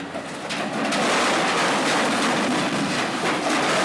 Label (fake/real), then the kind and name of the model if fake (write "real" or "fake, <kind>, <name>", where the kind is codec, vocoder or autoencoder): real